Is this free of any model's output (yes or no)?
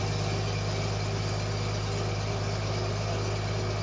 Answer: yes